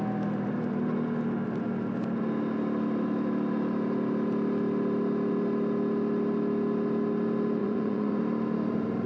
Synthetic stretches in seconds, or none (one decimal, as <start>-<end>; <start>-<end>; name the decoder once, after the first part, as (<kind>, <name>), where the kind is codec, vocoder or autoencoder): 7.6-8.2 (vocoder, Vocos)